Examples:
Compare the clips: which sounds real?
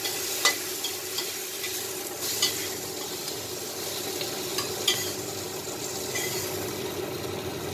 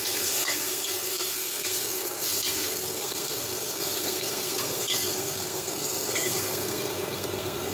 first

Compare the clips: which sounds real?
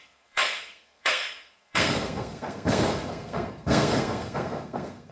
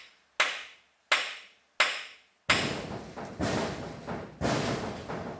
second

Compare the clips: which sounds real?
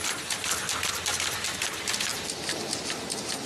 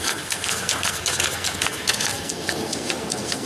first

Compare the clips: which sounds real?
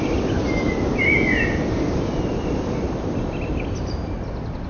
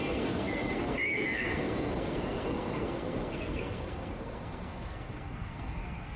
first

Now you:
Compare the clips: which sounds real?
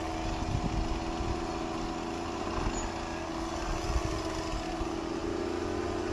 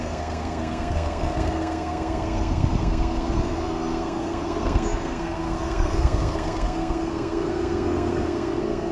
first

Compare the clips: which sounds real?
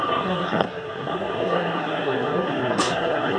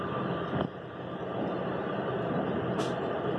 second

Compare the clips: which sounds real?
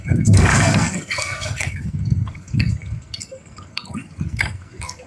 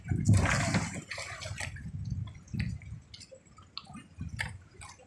second